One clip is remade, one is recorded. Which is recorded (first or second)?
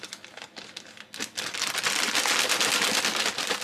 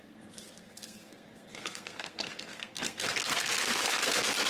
first